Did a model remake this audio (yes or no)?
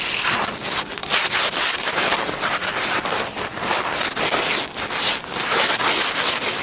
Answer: no